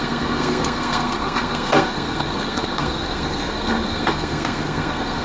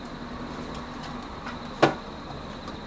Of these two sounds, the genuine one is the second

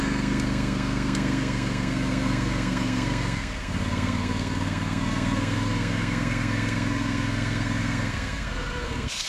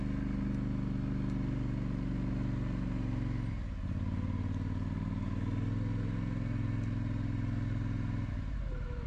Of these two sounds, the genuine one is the second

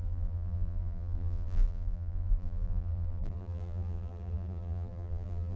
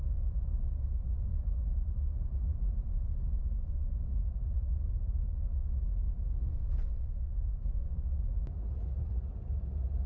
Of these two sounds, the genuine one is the second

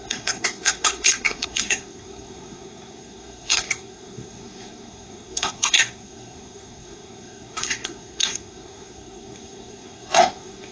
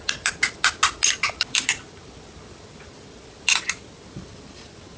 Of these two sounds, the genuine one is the second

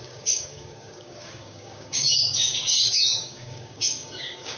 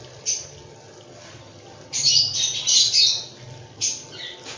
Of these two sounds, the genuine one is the second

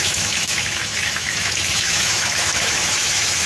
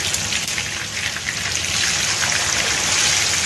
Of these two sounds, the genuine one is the second